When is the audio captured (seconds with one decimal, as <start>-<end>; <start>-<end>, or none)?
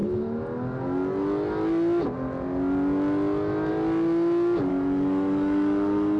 0.0-4.7